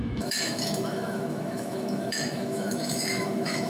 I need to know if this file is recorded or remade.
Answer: remade